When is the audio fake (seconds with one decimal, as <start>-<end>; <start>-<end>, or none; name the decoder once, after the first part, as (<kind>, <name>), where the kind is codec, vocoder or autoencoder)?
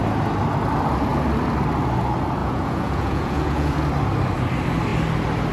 2.4-3.7 (vocoder, Vocos)